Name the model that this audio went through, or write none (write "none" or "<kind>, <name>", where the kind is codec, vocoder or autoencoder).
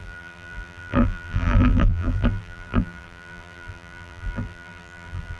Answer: vocoder, BigVGAN v2